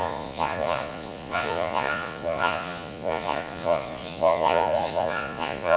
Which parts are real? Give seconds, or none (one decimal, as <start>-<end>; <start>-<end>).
none